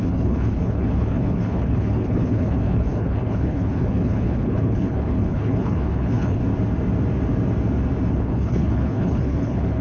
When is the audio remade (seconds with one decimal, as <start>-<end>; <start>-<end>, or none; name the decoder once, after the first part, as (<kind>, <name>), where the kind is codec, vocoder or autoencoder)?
0.0-6.4 (codec, HILCodec); 8.1-9.8